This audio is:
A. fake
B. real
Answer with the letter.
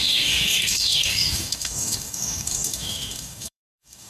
A